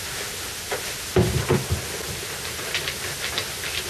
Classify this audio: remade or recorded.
recorded